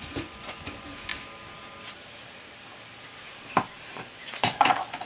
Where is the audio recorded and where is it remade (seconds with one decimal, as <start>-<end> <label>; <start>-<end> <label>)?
0.0-1.1 remade; 1.1-3.9 recorded; 3.9-5.1 remade